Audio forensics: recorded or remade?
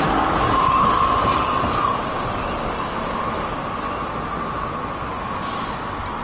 recorded